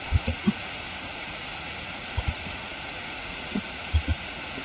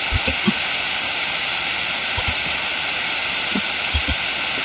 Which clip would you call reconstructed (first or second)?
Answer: first